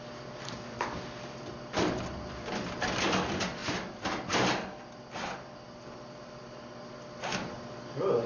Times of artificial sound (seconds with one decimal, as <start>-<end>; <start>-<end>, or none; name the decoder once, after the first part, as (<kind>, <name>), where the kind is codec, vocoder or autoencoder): none